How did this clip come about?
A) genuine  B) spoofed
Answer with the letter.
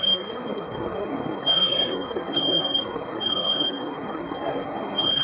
B